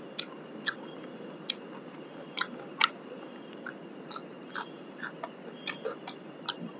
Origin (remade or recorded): recorded